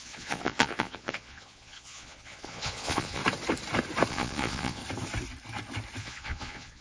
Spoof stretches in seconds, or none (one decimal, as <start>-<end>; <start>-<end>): 0.0-3.2; 4.1-4.8; 6.0-6.8